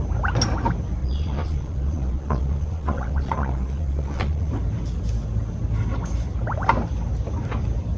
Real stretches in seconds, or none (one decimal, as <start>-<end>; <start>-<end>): 0.0-1.0; 4.5-8.0